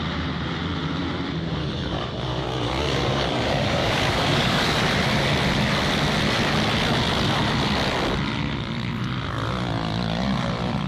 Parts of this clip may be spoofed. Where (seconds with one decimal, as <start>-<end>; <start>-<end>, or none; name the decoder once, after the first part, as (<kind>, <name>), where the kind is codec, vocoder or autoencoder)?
1.6-4.9 (codec, DAC)